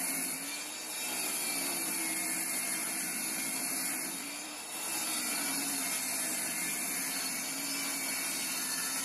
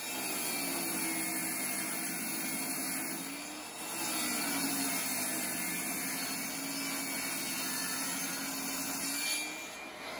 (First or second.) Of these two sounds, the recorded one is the second